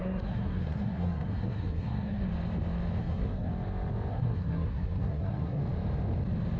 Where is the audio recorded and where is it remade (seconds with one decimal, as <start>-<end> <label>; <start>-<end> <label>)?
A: 0.0-2.3 remade; 2.3-3.0 recorded; 3.0-3.5 remade; 3.5-4.1 recorded; 4.1-5.6 remade; 5.6-6.6 recorded